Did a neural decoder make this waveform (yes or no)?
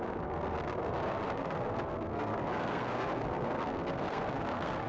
yes